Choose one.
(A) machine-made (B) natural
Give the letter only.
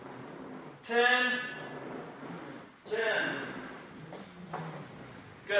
B